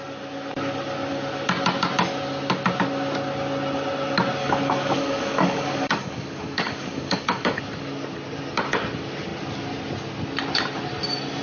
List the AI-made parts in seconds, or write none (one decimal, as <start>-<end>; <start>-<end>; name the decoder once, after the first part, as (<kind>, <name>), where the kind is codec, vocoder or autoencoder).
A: 4.4-7.6 (codec, DAC)